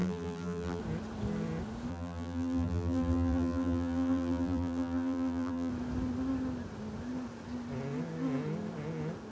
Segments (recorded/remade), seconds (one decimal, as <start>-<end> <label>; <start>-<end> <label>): 0.0-0.8 remade; 0.8-1.9 recorded; 1.9-5.7 remade; 5.7-9.3 recorded